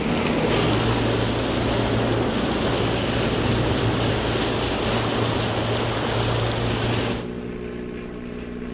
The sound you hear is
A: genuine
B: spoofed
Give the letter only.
A